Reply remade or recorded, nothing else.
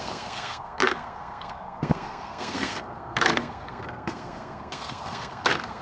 remade